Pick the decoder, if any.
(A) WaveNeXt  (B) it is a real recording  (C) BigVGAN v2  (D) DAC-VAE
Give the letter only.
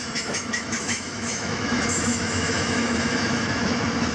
D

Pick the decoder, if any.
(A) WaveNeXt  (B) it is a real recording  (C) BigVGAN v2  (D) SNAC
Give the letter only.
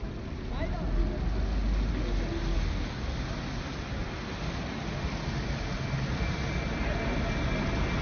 B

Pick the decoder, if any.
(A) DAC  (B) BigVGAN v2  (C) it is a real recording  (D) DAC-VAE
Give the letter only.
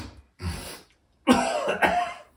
C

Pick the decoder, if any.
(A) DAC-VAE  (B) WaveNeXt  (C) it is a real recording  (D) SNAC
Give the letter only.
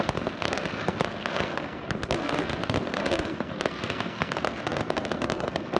D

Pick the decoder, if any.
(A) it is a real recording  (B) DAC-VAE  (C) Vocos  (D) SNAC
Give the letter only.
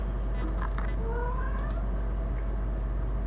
A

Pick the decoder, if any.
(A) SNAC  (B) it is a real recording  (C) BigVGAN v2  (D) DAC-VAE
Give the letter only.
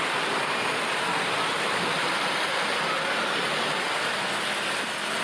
B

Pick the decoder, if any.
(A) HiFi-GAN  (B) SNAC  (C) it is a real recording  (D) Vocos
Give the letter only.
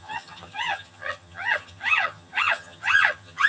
A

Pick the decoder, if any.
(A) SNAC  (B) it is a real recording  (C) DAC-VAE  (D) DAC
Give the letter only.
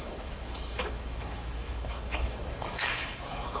C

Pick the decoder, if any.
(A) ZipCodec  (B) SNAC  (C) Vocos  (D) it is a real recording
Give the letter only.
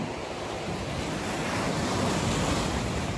D